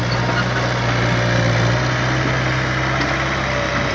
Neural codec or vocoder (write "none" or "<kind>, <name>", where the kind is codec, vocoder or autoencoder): none